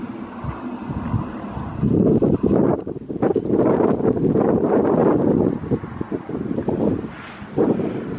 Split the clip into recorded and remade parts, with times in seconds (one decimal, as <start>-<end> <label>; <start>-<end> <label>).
0.0-8.2 recorded

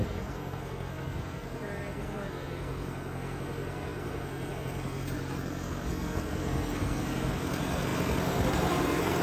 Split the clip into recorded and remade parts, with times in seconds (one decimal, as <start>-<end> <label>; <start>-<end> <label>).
0.0-9.2 remade

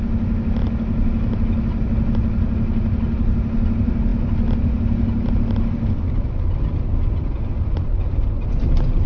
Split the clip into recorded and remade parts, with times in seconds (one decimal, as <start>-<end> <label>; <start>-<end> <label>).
0.0-9.1 recorded

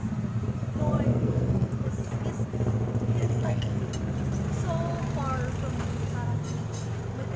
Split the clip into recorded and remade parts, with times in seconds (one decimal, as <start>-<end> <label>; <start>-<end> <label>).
0.0-1.1 recorded; 1.1-1.7 remade; 1.7-3.2 recorded; 3.2-3.8 remade; 3.8-7.4 recorded

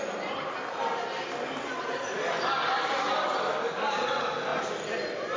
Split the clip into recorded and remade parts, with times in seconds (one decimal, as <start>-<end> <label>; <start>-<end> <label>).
0.0-5.4 recorded

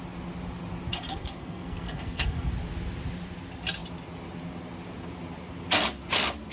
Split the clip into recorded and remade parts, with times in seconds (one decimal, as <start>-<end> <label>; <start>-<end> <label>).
0.0-0.9 recorded; 0.9-2.5 remade; 2.5-6.5 recorded